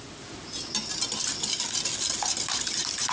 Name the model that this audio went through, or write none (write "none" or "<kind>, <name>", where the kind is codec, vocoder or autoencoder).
none